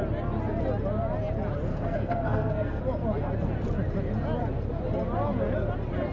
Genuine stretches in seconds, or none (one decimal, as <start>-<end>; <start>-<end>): 0.0-1.7; 2.8-6.1

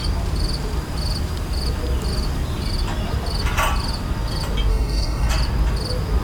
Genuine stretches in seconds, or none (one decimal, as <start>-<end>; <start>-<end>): 0.0-4.7; 5.3-6.2

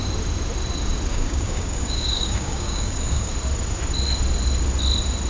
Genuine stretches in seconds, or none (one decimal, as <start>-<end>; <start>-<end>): 0.0-1.1; 3.3-5.3

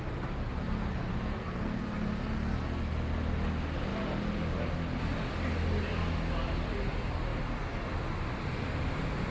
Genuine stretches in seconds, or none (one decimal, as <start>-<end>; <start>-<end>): 0.0-1.1; 1.8-9.3

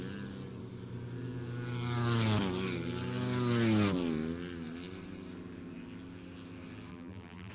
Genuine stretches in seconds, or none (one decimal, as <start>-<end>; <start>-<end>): 0.0-6.9

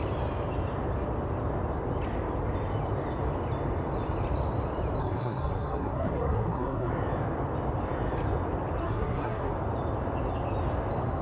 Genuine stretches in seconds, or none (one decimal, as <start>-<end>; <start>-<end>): 0.0-5.0; 6.9-8.8; 9.5-11.2

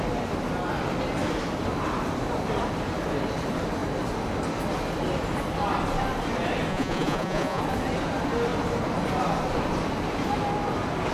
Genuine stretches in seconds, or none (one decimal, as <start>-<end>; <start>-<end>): 0.0-6.7; 7.6-11.1

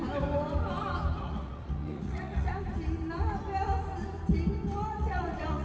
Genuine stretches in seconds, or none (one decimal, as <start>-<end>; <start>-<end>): 0.0-1.2; 2.5-4.9